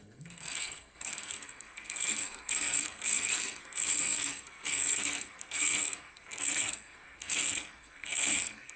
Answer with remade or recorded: remade